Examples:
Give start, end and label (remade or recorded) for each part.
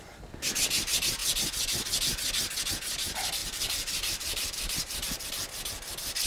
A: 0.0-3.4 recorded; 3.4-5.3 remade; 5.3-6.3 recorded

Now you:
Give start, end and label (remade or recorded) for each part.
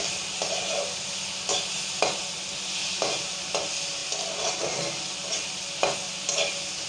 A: 0.0-2.8 recorded; 2.8-3.6 remade; 3.6-6.9 recorded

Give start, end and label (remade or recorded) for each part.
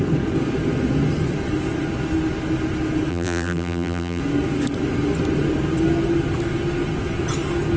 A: 0.0-3.1 recorded; 3.1-4.2 remade; 4.2-7.8 recorded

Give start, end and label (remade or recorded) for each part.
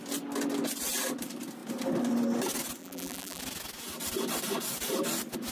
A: 0.0-2.8 recorded; 2.8-3.4 remade; 3.4-5.5 recorded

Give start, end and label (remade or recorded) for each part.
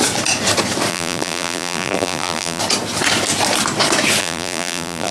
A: 0.0-0.9 recorded; 0.9-2.6 remade; 2.6-4.2 recorded; 4.2-5.1 remade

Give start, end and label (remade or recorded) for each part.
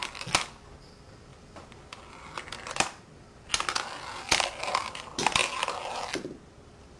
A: 0.0-1.3 recorded; 1.3-3.5 remade; 3.5-7.0 recorded